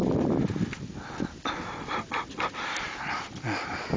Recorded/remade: recorded